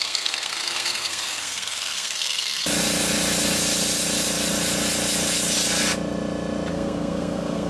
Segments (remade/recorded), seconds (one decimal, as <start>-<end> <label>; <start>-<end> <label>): 0.0-2.6 remade; 2.6-6.7 recorded; 6.7-7.7 remade